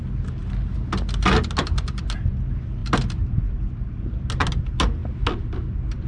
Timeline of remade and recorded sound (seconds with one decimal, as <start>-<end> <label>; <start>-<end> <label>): 0.0-6.1 recorded